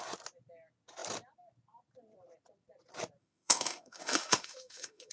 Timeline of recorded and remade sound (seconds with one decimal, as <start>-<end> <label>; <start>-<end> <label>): 0.0-3.2 recorded; 3.2-5.1 remade